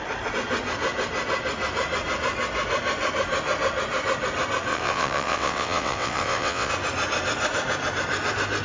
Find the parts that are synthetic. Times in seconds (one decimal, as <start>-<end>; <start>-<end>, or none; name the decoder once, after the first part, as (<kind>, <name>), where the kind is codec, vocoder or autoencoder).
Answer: 4.7-6.7 (vocoder, WaveNeXt)